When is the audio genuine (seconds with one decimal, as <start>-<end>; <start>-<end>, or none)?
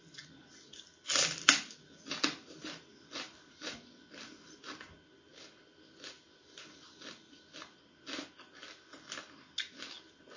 0.0-10.4